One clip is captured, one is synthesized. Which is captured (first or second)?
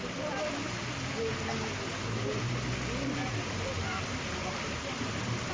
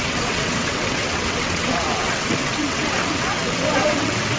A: first